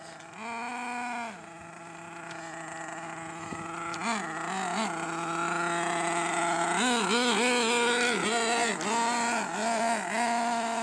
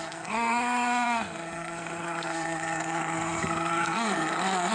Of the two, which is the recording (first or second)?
first